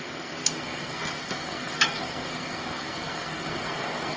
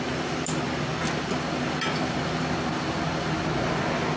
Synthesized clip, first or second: first